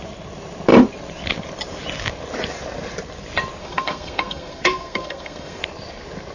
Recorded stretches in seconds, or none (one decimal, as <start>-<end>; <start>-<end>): 0.0-3.6; 5.6-6.3